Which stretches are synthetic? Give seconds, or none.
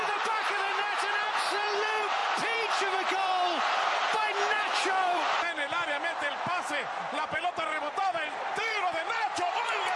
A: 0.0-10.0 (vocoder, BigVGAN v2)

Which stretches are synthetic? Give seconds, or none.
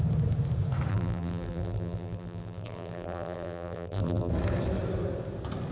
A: 0.9-4.3 (vocoder, BigVGAN v2)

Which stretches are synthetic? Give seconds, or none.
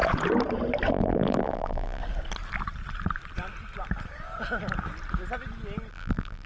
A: 0.9-2.0 (vocoder, BigVGAN v2); 5.9-6.5